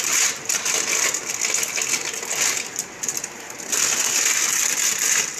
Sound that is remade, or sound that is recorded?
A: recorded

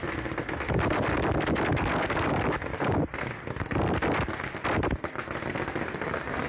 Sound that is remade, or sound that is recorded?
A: remade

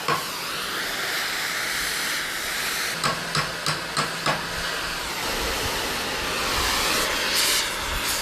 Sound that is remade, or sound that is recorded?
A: recorded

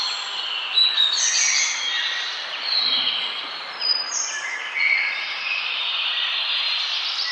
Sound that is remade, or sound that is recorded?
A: remade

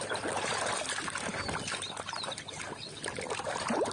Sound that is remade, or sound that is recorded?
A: recorded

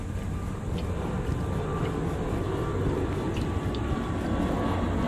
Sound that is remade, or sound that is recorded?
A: recorded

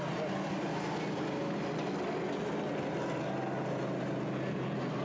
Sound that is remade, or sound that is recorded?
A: recorded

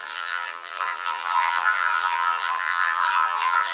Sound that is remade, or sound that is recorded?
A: remade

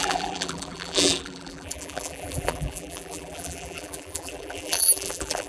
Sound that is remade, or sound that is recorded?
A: remade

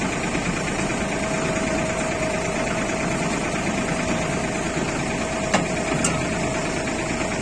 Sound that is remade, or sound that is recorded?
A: recorded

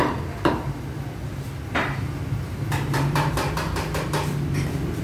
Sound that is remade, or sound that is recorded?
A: recorded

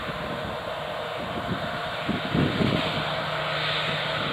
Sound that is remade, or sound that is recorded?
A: recorded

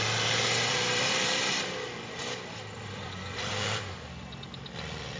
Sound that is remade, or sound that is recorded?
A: remade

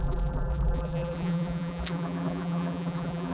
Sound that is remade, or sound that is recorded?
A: remade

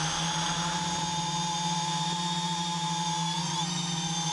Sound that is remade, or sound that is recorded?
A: remade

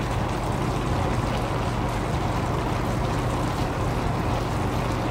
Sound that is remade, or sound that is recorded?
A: recorded